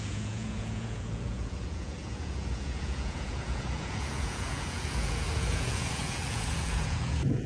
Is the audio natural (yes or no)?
no